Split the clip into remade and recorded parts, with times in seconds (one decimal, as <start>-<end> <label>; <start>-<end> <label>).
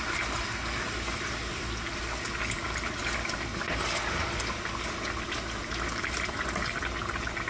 0.0-5.6 recorded; 5.6-6.8 remade; 6.8-7.5 recorded